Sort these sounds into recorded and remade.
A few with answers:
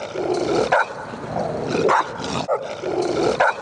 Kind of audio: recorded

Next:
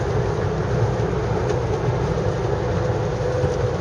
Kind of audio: recorded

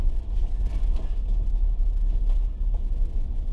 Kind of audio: recorded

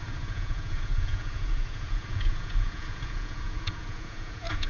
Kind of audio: remade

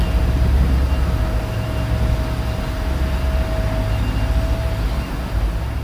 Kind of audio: recorded